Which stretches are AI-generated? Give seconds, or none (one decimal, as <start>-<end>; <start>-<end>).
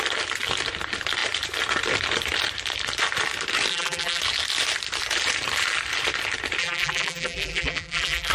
3.7-4.2; 6.6-8.3